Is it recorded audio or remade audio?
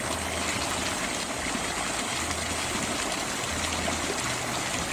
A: recorded